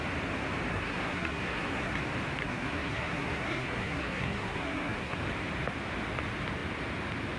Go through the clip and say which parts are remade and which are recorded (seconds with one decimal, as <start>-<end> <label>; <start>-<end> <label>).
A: 0.0-0.7 recorded; 0.7-2.0 remade; 2.0-2.4 recorded; 2.4-5.2 remade; 5.2-7.4 recorded